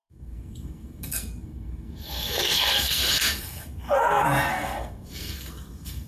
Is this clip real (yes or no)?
no